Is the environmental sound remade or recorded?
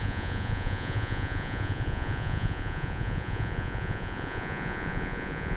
remade